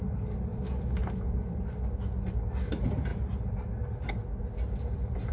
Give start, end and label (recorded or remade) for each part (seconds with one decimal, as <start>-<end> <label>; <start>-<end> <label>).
0.0-0.5 recorded; 0.5-1.6 remade; 1.6-3.1 recorded; 3.1-4.1 remade; 4.1-5.3 recorded